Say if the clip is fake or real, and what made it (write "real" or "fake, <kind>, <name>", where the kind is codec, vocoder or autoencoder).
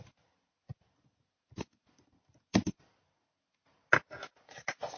real